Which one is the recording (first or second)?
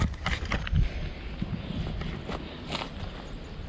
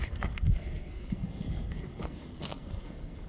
first